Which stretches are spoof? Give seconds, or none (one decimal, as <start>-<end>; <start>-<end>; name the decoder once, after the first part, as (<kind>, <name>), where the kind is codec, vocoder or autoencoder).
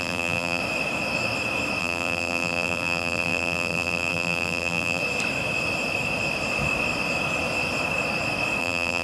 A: 0.0-0.6 (vocoder, BigVGAN v2); 1.8-5.0; 8.6-9.0